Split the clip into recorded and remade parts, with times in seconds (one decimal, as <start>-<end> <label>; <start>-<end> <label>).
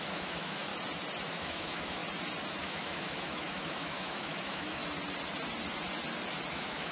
0.0-0.7 remade; 0.7-1.3 recorded; 1.3-2.0 remade; 2.0-2.6 recorded; 2.6-4.8 remade; 4.8-6.5 recorded; 6.5-6.9 remade